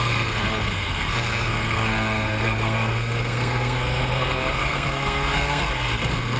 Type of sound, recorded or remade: remade